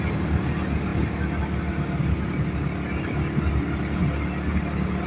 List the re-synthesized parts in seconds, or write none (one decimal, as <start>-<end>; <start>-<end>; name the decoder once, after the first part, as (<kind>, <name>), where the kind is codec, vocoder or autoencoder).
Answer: none